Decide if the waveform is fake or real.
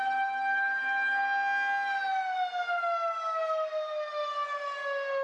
real